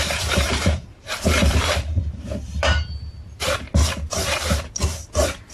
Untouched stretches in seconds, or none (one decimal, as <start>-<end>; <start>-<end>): 3.7-5.5